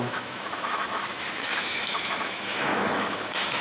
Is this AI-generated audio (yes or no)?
yes